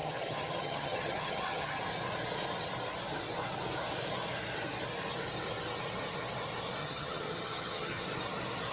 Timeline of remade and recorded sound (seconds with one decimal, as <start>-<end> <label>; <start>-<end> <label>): 0.0-1.8 remade; 1.8-6.8 recorded; 6.8-8.0 remade; 8.0-8.7 recorded